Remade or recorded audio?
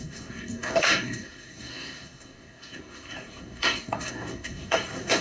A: remade